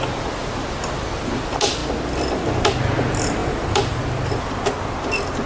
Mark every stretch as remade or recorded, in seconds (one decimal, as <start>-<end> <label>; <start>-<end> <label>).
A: 0.0-3.4 recorded; 3.4-4.0 remade; 4.0-5.5 recorded